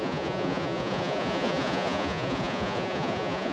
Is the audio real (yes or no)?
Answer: no